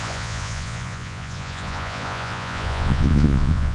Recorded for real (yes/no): no